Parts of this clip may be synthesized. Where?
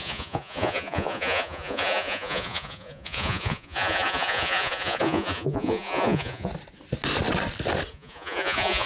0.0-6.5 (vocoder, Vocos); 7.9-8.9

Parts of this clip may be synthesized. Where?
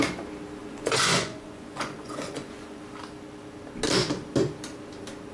0.6-2.8 (vocoder, Vocos)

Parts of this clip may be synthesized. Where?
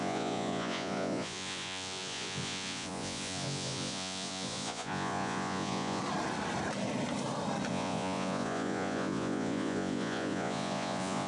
0.0-6.0 (vocoder, Vocos); 7.7-11.3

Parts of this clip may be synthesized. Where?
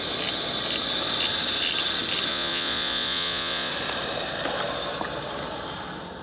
2.3-3.7 (vocoder, Vocos)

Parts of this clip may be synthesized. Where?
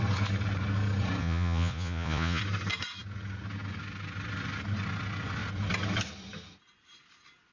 1.2-2.4 (vocoder, Vocos)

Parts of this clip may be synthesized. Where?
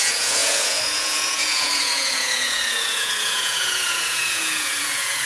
0.0-5.3 (vocoder, Vocos)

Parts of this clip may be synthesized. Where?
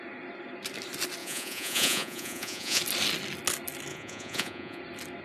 1.2-2.8 (vocoder, Vocos); 3.9-4.8